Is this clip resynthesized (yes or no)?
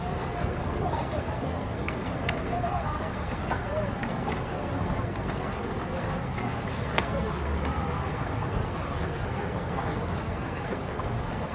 yes